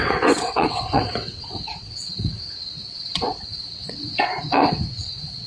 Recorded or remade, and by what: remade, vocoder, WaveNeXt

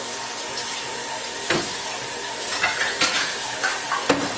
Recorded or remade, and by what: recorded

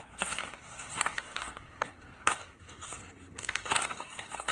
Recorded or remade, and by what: remade, codec, SNAC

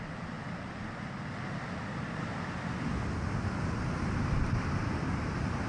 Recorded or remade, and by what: recorded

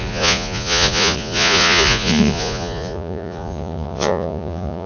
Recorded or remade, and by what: remade, vocoder, Vocos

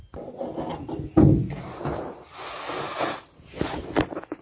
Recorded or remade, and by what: recorded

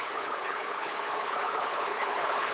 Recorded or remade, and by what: remade, codec, HILCodec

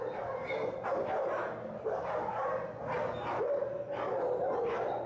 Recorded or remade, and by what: recorded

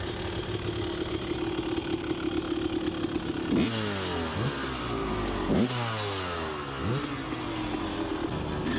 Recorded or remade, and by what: recorded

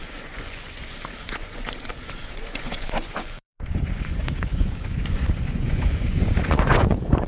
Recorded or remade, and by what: remade, vocoder, Vocos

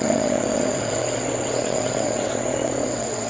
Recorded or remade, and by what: remade, vocoder, WaveNeXt